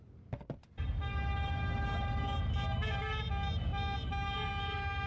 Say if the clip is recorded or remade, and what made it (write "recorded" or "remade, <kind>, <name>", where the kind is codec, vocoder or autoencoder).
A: recorded